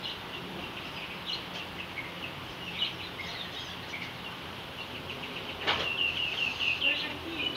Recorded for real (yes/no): yes